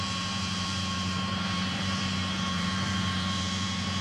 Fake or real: fake